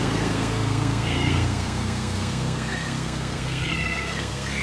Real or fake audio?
fake